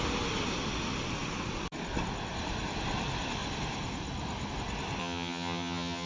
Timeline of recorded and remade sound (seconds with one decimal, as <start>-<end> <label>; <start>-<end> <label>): 0.0-5.0 recorded; 5.0-6.1 remade